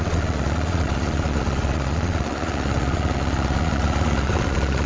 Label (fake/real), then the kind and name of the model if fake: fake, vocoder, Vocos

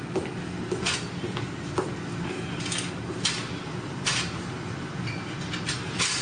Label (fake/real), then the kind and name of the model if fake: real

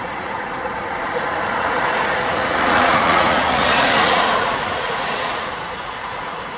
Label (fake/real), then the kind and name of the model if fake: fake, vocoder, Vocos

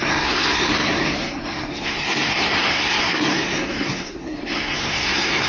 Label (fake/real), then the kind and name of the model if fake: fake, codec, SNAC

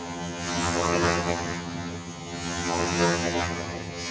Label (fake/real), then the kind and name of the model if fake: fake, vocoder, HiFi-GAN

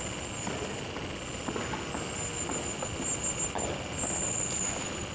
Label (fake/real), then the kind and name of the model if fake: real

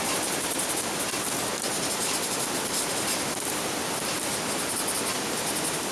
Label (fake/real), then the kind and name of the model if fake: real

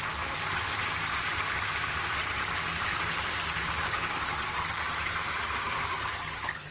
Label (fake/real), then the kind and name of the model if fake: fake, vocoder, BigVGAN v2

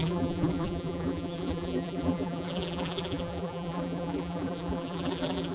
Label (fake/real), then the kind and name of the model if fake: fake, vocoder, BigVGAN v2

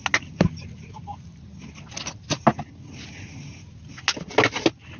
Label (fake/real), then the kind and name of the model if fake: real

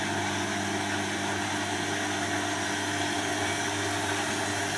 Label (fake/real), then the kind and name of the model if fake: real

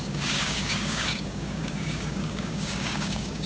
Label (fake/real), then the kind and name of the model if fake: fake, codec, DAC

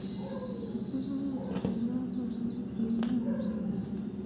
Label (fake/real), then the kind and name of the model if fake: real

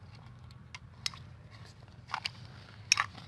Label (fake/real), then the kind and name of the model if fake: real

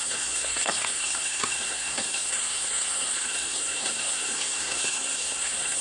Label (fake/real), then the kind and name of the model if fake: fake, codec, SNAC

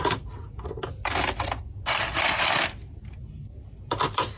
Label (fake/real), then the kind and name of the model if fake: real